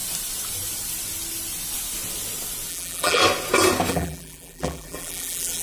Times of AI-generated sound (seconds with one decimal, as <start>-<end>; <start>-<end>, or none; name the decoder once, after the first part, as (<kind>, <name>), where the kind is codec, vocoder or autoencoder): 2.7-3.2 (vocoder, BigVGAN v2); 3.9-5.6